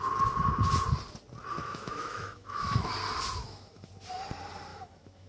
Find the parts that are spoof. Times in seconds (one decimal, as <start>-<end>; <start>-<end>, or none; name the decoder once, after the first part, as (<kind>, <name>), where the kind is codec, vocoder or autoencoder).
1.6-2.9 (autoencoder, DAC-VAE); 3.4-3.9; 4.7-5.3